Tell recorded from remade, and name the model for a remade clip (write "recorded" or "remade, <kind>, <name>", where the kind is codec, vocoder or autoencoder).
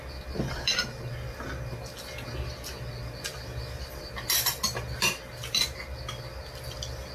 recorded